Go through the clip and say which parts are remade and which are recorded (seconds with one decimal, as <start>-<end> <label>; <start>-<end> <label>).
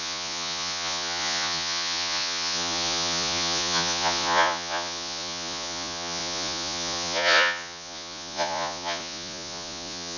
0.0-10.2 remade